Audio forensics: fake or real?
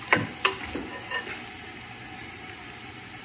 real